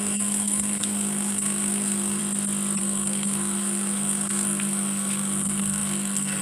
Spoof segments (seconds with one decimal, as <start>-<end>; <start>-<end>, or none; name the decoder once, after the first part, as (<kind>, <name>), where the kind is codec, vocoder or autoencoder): 0.0-2.2 (codec, SNAC); 2.8-6.4